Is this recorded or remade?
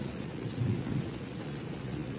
remade